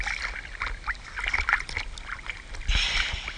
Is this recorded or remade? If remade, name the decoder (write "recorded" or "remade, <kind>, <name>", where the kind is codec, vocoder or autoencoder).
recorded